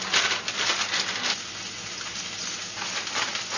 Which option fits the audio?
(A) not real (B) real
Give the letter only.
B